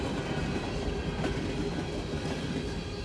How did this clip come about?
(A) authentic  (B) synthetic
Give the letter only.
A